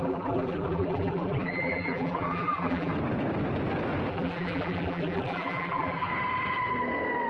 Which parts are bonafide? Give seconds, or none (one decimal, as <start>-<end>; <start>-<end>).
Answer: 2.9-4.1; 6.1-7.3